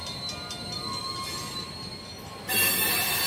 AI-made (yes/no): no